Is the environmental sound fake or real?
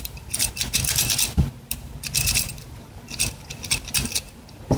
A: fake